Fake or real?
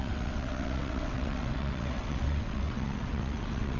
fake